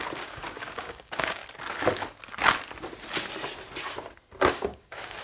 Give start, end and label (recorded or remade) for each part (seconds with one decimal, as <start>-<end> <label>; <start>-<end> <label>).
0.0-1.4 remade; 1.4-4.5 recorded; 4.5-5.2 remade